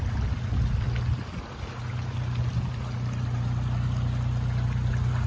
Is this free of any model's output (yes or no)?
yes